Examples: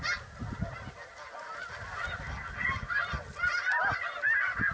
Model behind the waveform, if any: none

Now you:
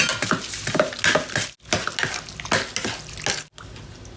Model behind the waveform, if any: none